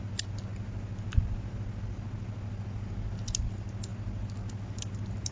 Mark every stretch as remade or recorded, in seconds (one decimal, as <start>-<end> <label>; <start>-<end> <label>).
0.0-5.3 recorded